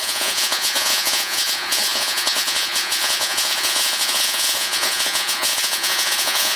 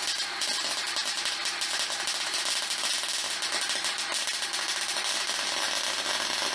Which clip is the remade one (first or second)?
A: first